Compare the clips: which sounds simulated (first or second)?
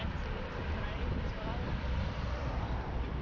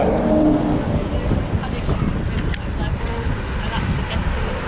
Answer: first